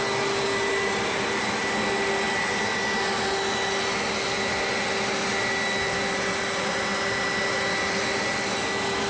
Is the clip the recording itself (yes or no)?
yes